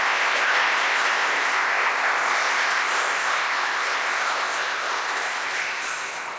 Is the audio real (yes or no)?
no